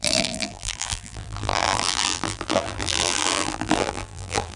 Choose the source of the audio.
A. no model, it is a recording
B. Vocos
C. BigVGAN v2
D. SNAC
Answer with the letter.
C